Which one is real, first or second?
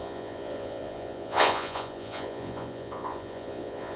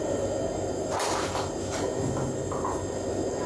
second